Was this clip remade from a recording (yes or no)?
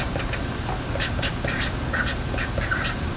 no